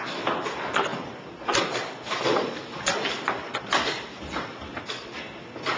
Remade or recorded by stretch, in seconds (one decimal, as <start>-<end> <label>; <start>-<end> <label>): 0.0-5.8 recorded

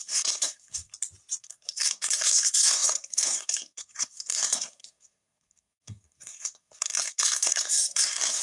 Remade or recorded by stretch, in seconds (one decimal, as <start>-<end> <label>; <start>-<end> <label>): 0.0-0.9 remade; 0.9-1.4 recorded; 1.4-8.4 remade